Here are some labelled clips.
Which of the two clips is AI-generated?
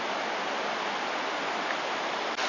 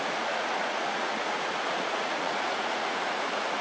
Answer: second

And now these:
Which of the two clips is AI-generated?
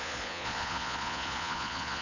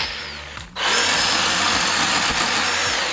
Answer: first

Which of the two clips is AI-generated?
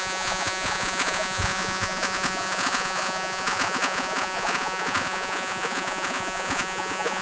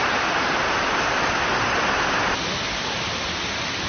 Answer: first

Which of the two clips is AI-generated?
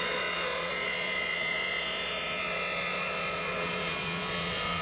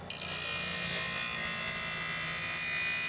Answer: first